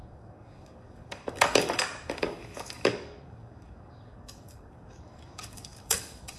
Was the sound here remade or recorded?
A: remade